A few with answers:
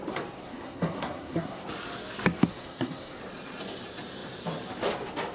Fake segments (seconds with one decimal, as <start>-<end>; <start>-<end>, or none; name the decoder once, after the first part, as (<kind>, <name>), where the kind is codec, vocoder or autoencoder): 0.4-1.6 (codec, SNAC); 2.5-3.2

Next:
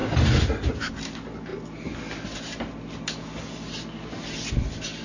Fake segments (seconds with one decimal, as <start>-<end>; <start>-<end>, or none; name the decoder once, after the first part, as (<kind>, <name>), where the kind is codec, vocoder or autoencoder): none

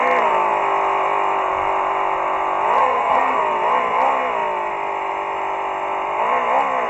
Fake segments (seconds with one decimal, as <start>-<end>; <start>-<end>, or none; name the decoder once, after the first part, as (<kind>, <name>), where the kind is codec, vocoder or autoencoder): 2.8-3.4 (codec, SNAC)